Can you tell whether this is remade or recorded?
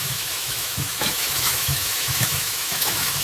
remade